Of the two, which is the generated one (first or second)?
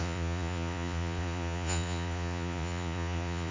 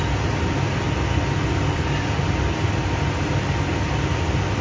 first